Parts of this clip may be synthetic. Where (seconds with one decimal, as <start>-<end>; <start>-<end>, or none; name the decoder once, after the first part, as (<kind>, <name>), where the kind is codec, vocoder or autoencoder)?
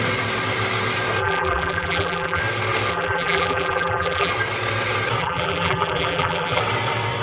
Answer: 1.2-2.4 (vocoder, BigVGAN v2); 2.9-4.3; 5.2-6.6